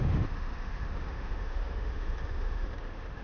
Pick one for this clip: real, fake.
fake